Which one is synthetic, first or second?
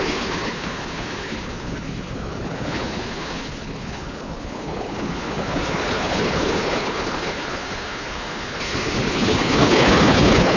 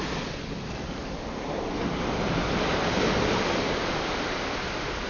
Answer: first